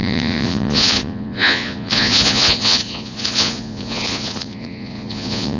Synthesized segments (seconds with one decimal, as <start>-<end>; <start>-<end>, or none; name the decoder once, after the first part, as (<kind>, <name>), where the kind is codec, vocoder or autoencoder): 0.0-5.6 (vocoder, Vocos)